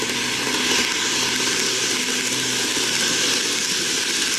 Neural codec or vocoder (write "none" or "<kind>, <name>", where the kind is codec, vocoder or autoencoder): none